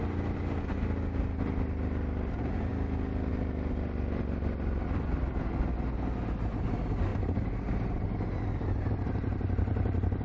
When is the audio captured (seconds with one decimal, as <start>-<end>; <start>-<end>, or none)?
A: 0.0-10.2